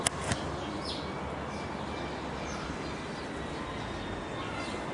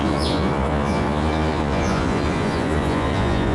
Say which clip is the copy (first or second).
second